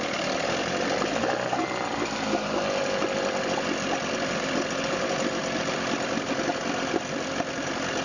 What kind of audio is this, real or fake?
real